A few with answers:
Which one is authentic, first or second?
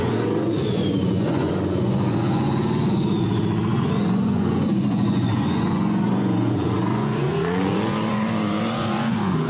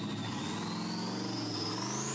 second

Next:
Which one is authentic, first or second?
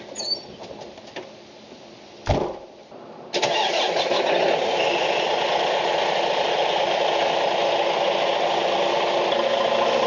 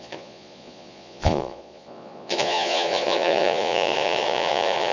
first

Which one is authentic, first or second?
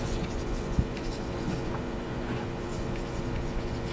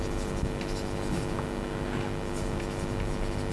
second